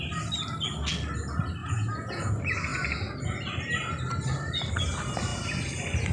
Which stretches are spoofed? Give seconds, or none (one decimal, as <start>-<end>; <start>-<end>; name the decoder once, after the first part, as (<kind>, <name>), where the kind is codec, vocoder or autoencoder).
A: 1.6-2.3 (vocoder, Vocos)